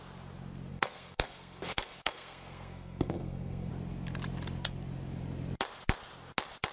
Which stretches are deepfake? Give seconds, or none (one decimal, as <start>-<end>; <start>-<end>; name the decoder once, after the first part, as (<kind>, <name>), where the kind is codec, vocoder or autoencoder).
0.7-3.7 (codec, SNAC)

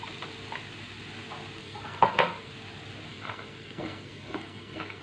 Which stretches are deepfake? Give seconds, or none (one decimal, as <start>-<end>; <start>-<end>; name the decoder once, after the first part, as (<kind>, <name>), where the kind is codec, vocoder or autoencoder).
1.6-2.5 (codec, SNAC); 3.1-5.0

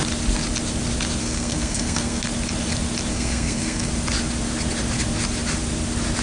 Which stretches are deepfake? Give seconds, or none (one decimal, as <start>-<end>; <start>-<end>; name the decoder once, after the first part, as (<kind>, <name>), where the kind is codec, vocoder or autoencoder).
1.2-2.2 (codec, SNAC); 3.1-3.9

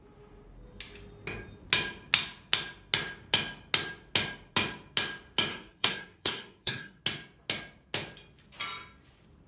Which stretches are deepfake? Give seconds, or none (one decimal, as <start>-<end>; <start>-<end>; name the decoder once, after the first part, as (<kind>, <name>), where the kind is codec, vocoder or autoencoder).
5.5-7.0 (codec, SNAC)

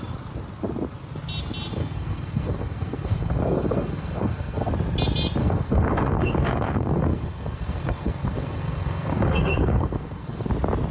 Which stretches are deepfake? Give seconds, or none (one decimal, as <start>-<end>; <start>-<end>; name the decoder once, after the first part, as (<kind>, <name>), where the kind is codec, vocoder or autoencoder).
1.8-4.7 (codec, SNAC); 5.4-10.5

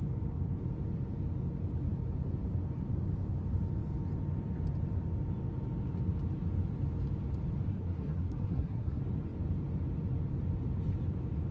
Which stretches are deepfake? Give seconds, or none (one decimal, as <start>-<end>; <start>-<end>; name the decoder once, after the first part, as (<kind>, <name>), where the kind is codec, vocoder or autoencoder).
7.7-9.0 (codec, SNAC)

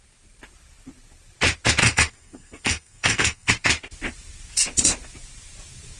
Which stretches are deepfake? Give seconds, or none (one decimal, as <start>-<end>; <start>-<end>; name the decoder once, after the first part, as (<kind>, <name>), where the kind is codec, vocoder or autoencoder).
1.8-3.5 (codec, SNAC)